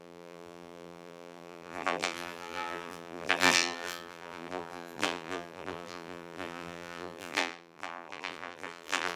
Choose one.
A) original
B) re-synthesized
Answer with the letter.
B